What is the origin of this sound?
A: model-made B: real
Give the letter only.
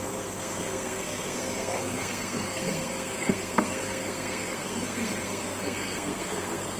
A